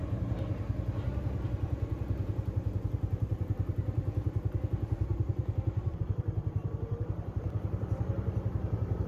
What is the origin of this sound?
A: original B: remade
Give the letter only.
B